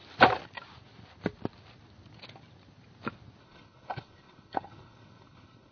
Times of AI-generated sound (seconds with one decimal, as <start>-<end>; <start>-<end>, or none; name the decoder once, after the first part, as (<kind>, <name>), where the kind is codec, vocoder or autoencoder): 3.4-5.7 (codec, HILCodec)